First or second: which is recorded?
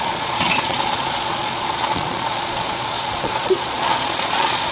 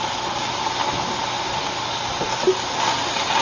second